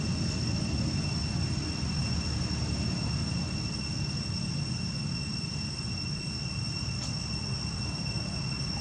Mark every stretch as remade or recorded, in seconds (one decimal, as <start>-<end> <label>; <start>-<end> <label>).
0.0-8.8 recorded